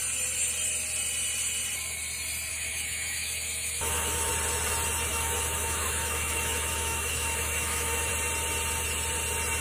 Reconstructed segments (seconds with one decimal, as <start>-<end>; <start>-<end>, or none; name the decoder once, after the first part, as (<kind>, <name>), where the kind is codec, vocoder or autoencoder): 2.5-4.3 (autoencoder, DAC-VAE); 5.1-8.1